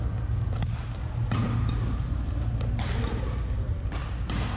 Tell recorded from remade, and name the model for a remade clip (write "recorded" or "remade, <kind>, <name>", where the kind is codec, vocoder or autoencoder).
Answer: recorded